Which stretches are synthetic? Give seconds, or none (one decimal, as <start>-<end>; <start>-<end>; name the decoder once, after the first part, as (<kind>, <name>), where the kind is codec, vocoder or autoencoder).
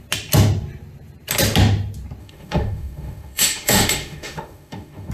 2.2-5.1 (autoencoder, DAC-VAE)